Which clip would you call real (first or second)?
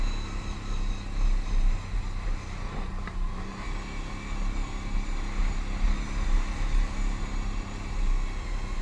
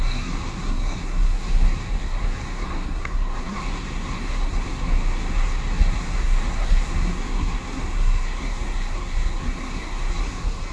first